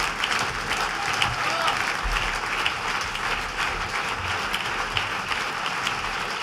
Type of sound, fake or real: real